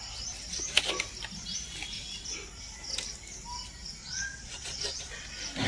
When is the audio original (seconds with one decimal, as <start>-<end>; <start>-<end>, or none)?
0.0-4.0; 5.1-5.7